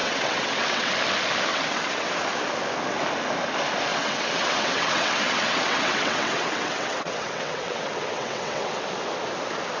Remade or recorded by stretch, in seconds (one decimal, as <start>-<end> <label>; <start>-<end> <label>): 0.0-0.9 remade; 0.9-1.5 recorded; 1.5-2.1 remade; 2.1-3.9 recorded; 3.9-8.8 remade; 8.8-9.8 recorded